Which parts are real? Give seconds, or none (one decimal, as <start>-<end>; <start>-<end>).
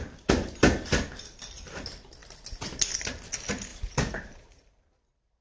0.0-3.7